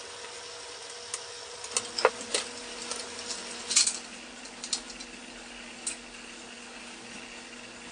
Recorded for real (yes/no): yes